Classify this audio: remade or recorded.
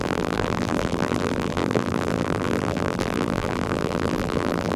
remade